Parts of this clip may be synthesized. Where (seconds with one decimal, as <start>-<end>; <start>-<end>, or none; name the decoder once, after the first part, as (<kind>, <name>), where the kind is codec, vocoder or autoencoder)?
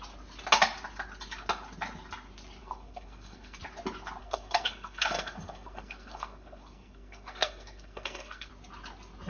2.6-3.6 (codec, SNAC); 4.2-8.5